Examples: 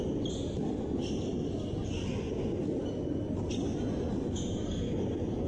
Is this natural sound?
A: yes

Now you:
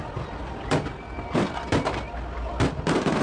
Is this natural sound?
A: yes